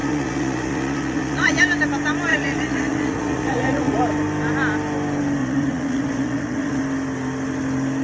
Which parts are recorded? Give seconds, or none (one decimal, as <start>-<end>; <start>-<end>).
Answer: 1.6-2.3; 4.0-5.4; 6.8-8.0

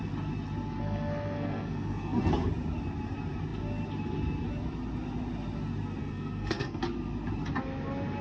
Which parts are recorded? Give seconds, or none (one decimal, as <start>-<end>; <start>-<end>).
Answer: 0.0-0.8; 2.5-6.0; 6.8-8.2

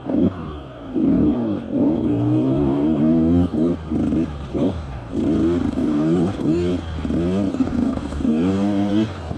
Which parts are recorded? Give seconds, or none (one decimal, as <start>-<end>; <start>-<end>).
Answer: 3.7-4.5; 5.1-5.7; 6.7-7.5

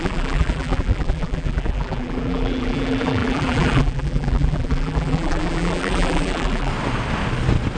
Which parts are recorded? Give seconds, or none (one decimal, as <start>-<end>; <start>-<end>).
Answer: 6.7-7.8

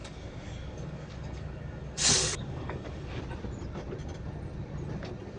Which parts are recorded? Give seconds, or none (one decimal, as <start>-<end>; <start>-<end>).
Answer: 3.2-5.4

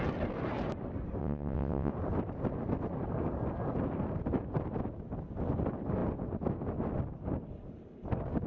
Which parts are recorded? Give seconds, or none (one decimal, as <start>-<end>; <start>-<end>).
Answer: 0.0-1.2; 1.9-8.5

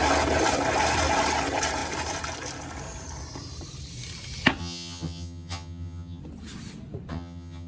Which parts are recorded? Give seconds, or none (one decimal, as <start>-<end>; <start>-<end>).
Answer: 0.0-4.6; 6.2-7.1